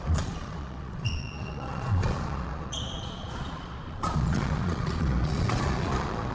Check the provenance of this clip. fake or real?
fake